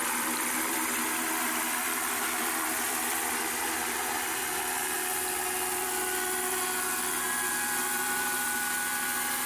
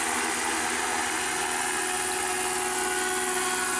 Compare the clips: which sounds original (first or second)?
second